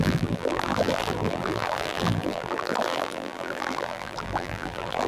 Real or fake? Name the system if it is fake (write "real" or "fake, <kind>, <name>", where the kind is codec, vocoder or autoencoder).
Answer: fake, vocoder, BigVGAN v2